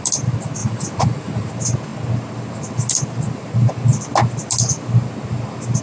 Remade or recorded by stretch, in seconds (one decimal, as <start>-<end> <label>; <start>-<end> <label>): 0.0-0.6 recorded; 0.6-1.5 remade; 1.5-5.8 recorded